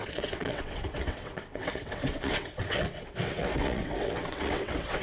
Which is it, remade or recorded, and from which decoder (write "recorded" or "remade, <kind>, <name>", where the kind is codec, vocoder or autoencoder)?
remade, vocoder, WaveNeXt